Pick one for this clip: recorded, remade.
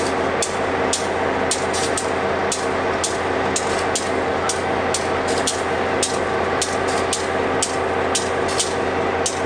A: recorded